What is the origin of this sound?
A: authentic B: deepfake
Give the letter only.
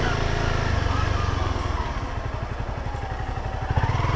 A